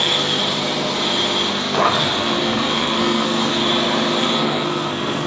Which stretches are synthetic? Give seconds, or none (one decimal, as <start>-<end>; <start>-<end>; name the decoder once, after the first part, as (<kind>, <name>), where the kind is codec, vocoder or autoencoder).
0.0-0.4 (codec, SNAC); 1.5-3.6; 4.2-5.3